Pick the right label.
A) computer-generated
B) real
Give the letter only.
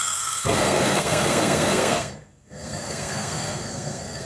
A